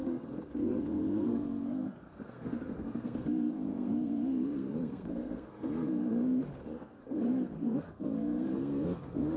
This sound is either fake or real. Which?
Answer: fake